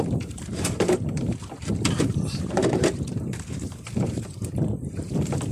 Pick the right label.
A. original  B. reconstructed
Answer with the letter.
B